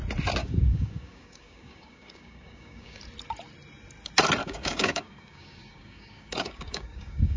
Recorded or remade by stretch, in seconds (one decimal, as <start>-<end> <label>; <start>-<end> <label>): 0.0-0.4 recorded; 0.4-3.0 remade; 3.0-4.4 recorded; 4.4-7.4 remade

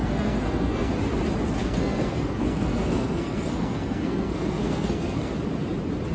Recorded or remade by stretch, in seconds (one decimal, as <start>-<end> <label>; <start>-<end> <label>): 0.0-0.9 remade; 0.9-1.6 recorded; 1.6-5.3 remade; 5.3-6.1 recorded

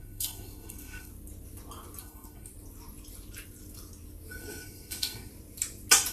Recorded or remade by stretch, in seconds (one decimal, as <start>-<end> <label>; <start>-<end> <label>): 0.0-1.1 remade; 1.1-2.0 recorded; 2.0-2.5 remade; 2.5-4.3 recorded; 4.3-5.3 remade; 5.3-6.1 recorded

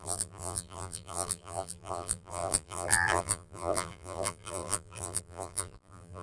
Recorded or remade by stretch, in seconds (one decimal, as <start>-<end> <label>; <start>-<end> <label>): 0.0-6.2 remade